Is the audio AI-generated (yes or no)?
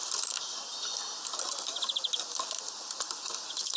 no